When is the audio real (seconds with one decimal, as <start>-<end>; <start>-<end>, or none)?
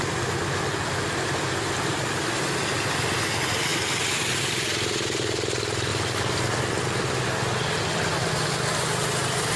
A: 0.0-9.6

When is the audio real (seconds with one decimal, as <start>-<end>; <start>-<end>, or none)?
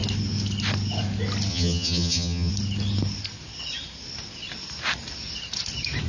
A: 0.0-1.5; 2.5-6.1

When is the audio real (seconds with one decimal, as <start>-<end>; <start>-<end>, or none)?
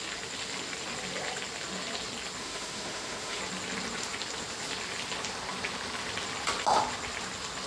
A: 0.0-2.4; 3.4-7.7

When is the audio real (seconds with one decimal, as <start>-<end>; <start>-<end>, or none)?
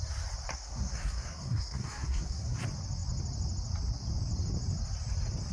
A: 0.0-0.5; 2.6-5.5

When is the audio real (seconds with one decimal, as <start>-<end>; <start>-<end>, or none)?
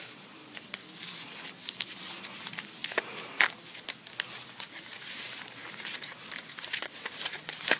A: 0.4-1.9; 2.8-4.7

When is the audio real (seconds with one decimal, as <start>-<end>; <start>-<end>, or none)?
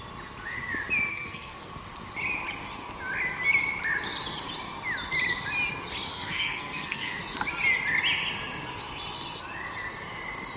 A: 0.0-1.1; 1.7-6.1; 7.2-10.6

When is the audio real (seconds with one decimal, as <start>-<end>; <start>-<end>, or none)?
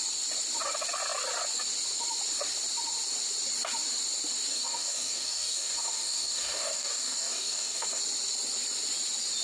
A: 0.0-4.5; 8.0-9.4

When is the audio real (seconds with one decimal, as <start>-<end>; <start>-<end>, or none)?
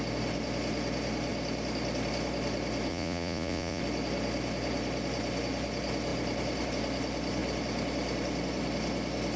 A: 0.0-2.9; 3.8-9.4